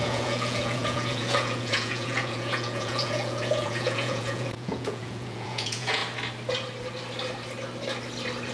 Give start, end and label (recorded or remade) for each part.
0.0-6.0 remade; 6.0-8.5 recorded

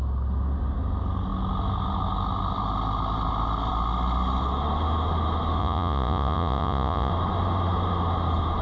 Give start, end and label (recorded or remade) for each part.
0.0-5.6 recorded; 5.6-7.1 remade; 7.1-8.6 recorded